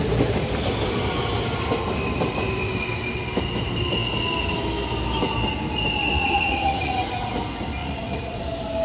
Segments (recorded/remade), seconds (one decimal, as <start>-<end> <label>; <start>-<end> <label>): 0.0-6.0 recorded; 6.0-7.3 remade; 7.3-7.8 recorded; 7.8-8.4 remade; 8.4-8.8 recorded